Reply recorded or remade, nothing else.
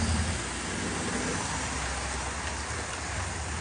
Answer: recorded